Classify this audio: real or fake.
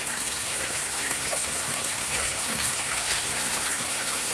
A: fake